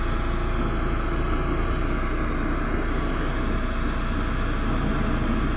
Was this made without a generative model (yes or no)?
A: yes